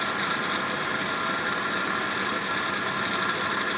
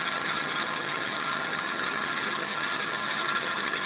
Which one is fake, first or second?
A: second